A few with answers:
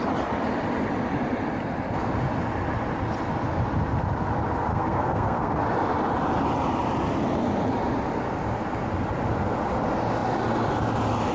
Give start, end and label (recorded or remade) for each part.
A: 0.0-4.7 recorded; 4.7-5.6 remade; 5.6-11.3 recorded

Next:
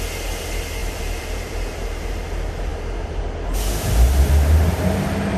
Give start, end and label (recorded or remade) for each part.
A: 0.0-0.8 recorded; 0.8-2.0 remade; 2.0-5.4 recorded

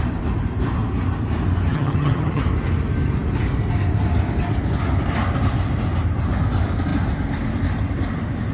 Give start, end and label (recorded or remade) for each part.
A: 0.0-1.7 recorded; 1.7-2.4 remade; 2.4-8.5 recorded

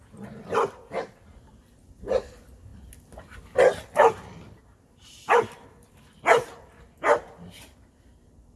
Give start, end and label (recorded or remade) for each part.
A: 0.0-8.6 recorded

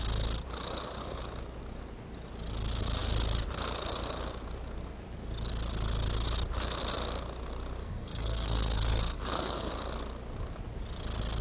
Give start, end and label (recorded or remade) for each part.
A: 0.0-7.8 recorded; 7.8-9.7 remade; 9.7-11.4 recorded